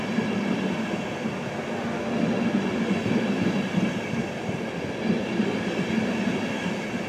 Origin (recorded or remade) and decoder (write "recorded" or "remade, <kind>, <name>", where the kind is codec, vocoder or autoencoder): recorded